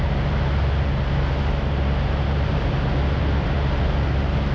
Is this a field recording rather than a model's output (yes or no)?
yes